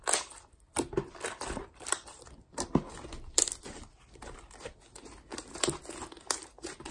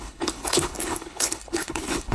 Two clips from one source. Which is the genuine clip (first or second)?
first